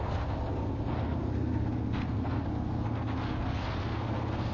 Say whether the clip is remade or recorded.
remade